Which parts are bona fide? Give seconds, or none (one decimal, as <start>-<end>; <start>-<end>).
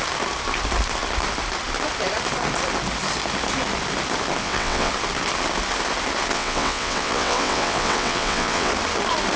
0.0-4.4; 4.9-6.3; 8.7-9.4